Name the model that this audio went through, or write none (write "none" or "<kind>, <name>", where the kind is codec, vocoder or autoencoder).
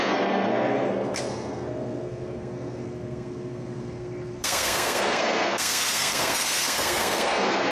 codec, SNAC